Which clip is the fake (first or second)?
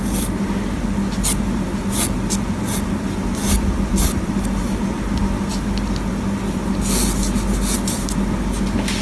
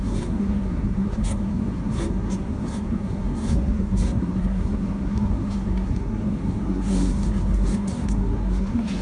second